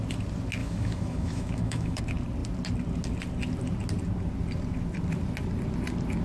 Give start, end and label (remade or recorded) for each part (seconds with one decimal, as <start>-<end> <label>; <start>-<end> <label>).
0.0-0.6 recorded; 0.6-2.0 remade; 2.0-6.2 recorded